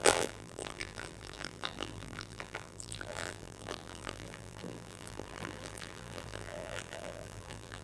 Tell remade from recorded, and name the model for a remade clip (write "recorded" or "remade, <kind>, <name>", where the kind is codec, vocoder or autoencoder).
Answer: remade, vocoder, BigVGAN v2